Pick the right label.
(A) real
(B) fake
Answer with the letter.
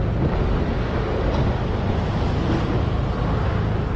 A